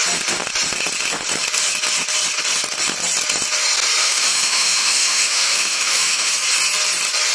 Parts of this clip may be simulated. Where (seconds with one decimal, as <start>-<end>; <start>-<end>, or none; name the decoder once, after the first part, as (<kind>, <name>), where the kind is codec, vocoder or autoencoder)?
4.0-6.3 (autoencoder, DAC-VAE)